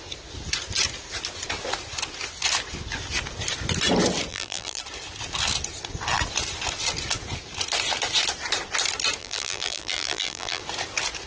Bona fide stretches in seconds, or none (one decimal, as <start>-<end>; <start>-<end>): 0.0-4.3; 4.8-9.2; 10.6-11.3